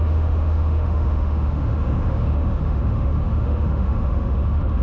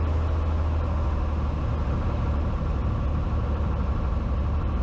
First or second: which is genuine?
second